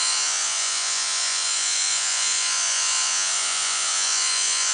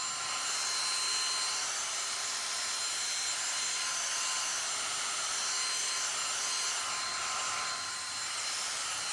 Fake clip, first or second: first